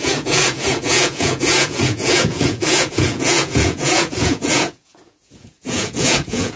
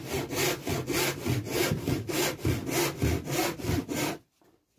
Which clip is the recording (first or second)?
second